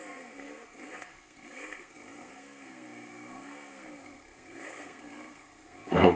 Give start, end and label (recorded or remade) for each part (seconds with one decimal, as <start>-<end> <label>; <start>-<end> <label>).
0.0-6.2 remade